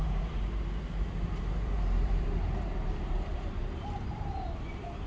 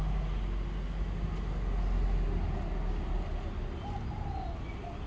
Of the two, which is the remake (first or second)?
first